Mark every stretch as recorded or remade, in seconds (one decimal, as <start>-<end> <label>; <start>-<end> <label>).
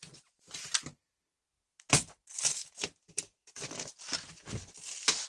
0.0-5.3 recorded